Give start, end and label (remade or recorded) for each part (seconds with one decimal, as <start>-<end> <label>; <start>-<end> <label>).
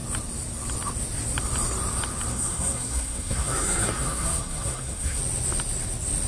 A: 0.0-2.3 recorded; 2.3-5.2 remade; 5.2-6.3 recorded